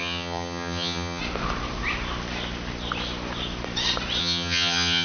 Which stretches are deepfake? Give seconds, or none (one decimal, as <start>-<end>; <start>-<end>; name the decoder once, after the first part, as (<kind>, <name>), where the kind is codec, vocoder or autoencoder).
0.0-1.2 (vocoder, HiFi-GAN); 4.2-5.0